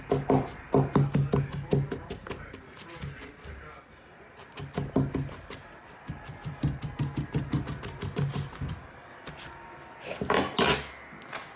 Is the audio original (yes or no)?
yes